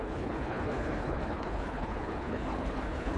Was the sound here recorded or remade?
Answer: remade